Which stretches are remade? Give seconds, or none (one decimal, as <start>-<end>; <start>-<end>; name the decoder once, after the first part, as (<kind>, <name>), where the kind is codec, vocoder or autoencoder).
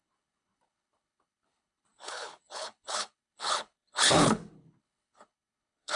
0.0-6.0 (codec, HILCodec)